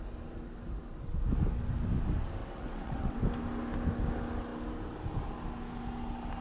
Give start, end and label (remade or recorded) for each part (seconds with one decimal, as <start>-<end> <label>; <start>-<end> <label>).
0.0-2.4 recorded; 2.4-3.2 remade; 3.2-6.4 recorded